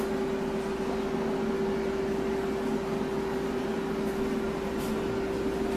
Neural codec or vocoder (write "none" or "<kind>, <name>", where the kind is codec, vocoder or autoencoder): none